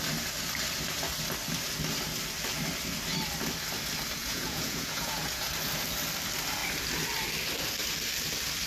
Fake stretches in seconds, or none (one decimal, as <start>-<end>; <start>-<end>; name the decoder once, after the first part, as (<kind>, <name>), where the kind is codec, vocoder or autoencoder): 4.2-5.5 (vocoder, Vocos)